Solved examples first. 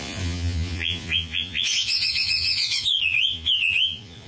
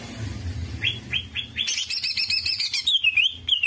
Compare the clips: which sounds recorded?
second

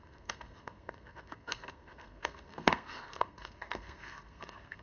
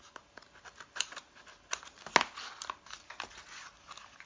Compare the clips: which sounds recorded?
second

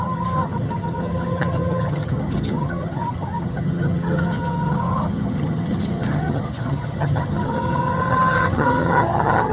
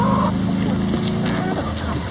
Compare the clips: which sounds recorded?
second